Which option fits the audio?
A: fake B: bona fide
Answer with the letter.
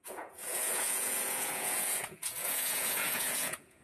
A